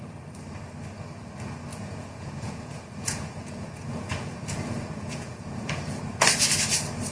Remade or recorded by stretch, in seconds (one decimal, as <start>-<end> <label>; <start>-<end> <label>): 0.0-1.7 recorded; 1.7-6.0 remade; 6.0-7.1 recorded